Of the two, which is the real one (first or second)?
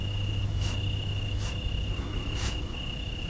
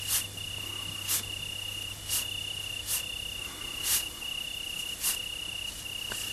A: second